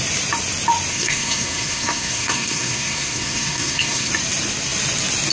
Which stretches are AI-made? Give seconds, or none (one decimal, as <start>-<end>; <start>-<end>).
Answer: 0.9-4.1

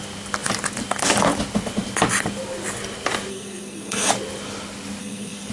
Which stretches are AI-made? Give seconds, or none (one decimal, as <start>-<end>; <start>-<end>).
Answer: 3.3-4.1; 5.0-5.5

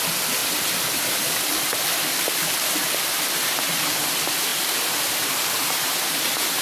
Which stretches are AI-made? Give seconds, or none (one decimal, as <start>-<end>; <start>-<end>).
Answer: 4.5-6.1

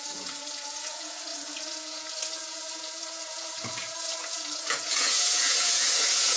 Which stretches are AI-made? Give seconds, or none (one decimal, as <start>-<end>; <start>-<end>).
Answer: 0.0-6.4